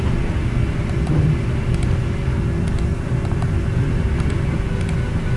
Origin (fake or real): real